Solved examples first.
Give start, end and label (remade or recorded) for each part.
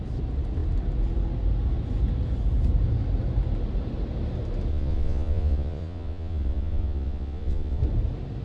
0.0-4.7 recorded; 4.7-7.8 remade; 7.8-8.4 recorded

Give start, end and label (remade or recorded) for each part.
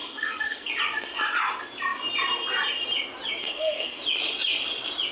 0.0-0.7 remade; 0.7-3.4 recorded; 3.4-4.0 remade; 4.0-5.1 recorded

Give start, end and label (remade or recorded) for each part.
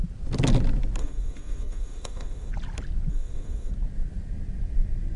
0.0-1.0 recorded; 1.0-2.5 remade; 2.5-3.1 recorded; 3.1-3.7 remade; 3.7-5.2 recorded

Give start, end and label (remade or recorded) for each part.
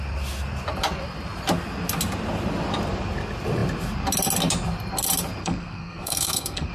0.0-5.4 recorded; 5.4-6.7 remade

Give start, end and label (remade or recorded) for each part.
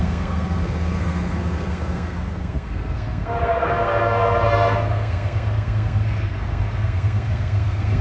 0.0-8.0 remade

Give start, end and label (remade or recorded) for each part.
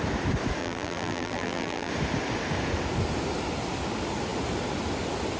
0.0-0.6 recorded; 0.6-1.9 remade; 1.9-5.4 recorded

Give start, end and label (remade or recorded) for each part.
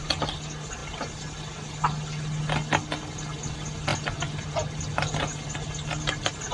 0.0-6.5 recorded